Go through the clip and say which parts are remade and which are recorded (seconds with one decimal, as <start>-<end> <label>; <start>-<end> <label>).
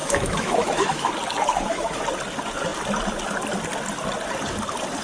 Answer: 0.0-1.1 remade; 1.1-1.5 recorded; 1.5-2.0 remade; 2.0-5.0 recorded